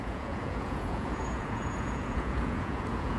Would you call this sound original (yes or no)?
no